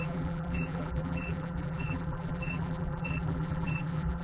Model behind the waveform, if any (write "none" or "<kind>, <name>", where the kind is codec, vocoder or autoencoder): vocoder, BigVGAN v2